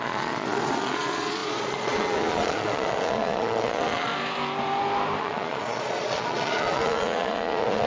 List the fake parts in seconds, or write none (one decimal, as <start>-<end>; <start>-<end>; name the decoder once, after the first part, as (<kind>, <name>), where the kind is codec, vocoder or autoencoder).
0.0-4.1 (vocoder, Vocos); 5.2-7.9